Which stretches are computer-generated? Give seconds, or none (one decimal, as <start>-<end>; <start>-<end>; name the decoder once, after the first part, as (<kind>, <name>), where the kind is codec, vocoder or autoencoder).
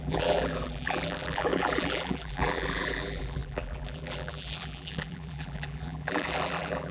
0.0-6.9 (vocoder, BigVGAN v2)